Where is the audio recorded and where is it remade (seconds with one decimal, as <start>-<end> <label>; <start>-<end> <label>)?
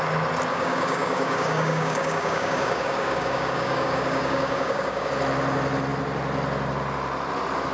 0.0-0.5 recorded; 0.5-5.1 remade; 5.1-7.7 recorded